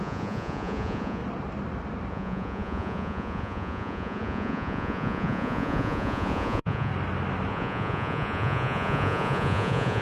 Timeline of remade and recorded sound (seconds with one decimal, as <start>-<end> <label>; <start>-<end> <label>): 0.0-1.2 remade; 1.2-2.1 recorded; 2.1-6.9 remade; 6.9-7.5 recorded; 7.5-10.0 remade